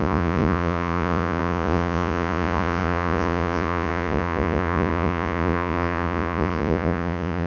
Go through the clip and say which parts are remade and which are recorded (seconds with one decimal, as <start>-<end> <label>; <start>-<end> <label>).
0.0-7.5 remade